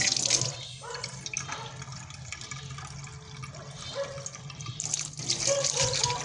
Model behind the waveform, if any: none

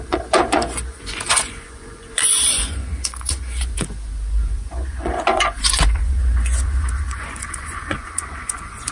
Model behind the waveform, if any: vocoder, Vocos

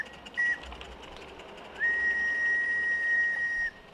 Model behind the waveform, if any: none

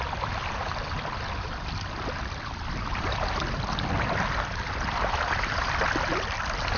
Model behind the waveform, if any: none